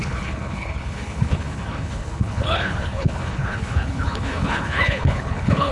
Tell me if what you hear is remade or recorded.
remade